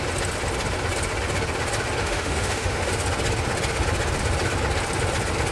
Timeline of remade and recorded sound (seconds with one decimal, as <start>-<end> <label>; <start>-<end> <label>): 0.0-2.0 recorded; 2.0-2.9 remade; 2.9-5.5 recorded